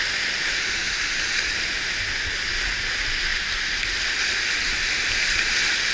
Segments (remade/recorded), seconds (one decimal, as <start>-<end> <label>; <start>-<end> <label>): 0.0-5.9 recorded